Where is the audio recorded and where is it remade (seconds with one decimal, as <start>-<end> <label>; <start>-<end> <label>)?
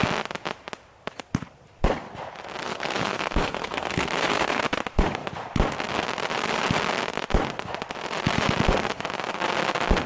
0.0-2.6 recorded; 2.6-4.6 remade; 4.6-10.1 recorded